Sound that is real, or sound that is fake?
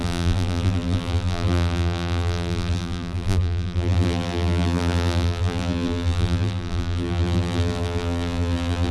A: fake